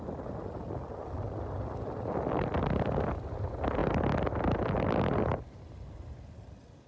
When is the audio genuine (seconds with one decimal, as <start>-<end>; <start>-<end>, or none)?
0.0-6.9